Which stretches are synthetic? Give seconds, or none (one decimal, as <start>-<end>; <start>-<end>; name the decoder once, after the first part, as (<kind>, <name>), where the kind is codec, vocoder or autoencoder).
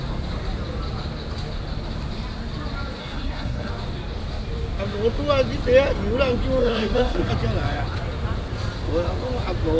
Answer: 3.0-3.7 (codec, SNAC); 6.6-7.3